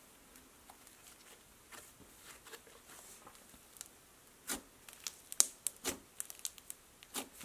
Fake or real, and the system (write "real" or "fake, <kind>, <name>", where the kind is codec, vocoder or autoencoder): real